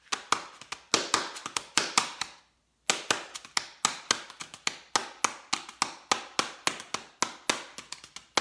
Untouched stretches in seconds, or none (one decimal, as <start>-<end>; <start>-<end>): 0.0-1.4; 2.4-8.4